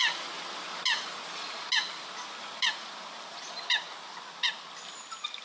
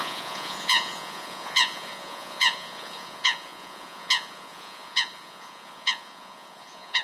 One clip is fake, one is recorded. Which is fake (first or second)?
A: second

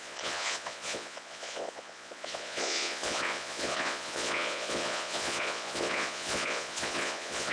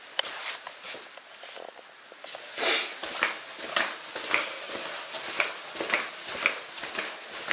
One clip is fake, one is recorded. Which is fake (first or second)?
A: first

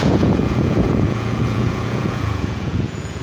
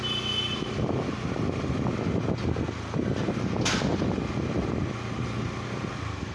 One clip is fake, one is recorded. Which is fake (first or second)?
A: first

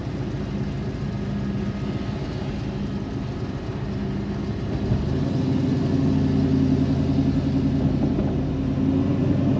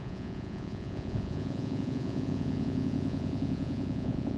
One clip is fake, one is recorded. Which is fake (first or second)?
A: second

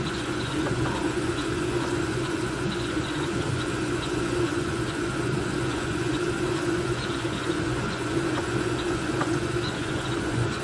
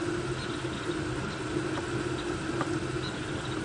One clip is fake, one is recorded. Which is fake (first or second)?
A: first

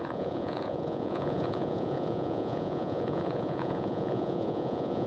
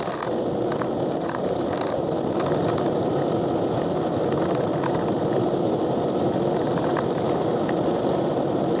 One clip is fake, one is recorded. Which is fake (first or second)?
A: first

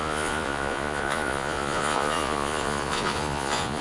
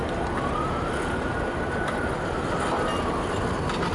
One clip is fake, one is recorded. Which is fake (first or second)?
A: first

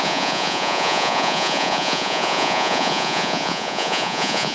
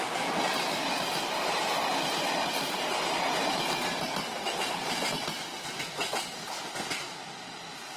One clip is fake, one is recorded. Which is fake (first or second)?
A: first